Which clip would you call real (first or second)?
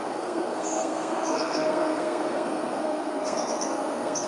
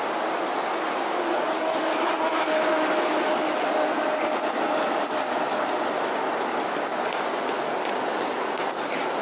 second